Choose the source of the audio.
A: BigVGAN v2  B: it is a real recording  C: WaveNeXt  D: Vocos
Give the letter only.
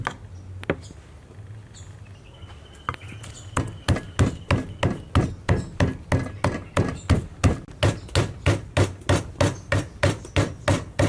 B